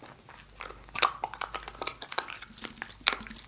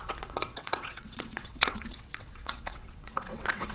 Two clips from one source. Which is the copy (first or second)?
second